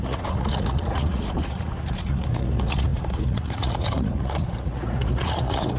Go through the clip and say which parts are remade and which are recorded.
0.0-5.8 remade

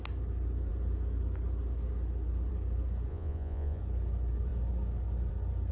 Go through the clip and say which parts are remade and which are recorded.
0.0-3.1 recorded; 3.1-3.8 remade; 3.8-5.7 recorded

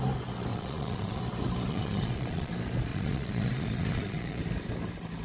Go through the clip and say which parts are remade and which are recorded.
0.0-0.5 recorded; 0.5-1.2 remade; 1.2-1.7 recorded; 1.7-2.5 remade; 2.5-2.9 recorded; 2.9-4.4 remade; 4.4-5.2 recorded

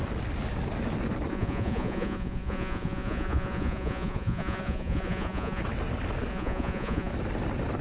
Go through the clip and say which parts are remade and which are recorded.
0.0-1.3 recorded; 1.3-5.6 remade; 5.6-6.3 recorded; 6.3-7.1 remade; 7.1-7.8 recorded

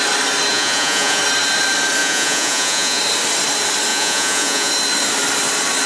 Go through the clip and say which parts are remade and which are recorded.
0.0-0.5 recorded; 0.5-1.2 remade; 1.2-2.0 recorded; 2.0-3.0 remade; 3.0-3.9 recorded; 3.9-4.7 remade; 4.7-5.9 recorded

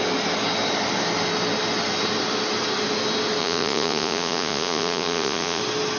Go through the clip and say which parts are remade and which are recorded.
0.0-3.4 recorded; 3.4-5.6 remade; 5.6-6.0 recorded

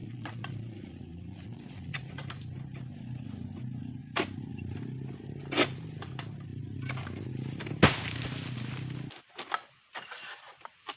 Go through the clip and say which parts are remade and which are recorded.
0.0-2.1 remade; 2.1-11.0 recorded

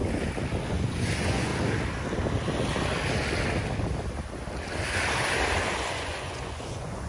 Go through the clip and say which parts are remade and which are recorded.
0.0-0.6 recorded; 0.6-1.5 remade; 1.5-5.8 recorded; 5.8-7.1 remade